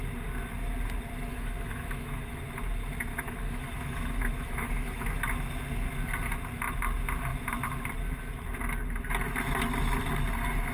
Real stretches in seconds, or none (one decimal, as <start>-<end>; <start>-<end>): 0.0-1.3; 2.3-3.1; 5.1-10.7